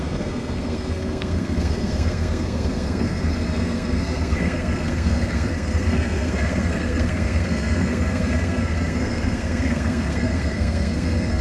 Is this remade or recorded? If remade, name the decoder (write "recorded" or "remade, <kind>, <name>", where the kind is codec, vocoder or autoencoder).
remade, codec, SNAC